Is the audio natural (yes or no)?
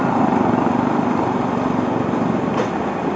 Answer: yes